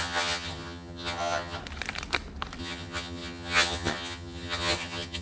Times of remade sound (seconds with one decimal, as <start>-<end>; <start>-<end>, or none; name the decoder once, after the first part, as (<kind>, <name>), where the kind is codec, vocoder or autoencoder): 0.0-1.6 (vocoder, HiFi-GAN); 2.6-5.2